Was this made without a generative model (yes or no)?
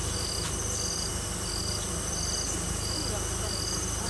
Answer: yes